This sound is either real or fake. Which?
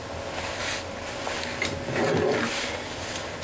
real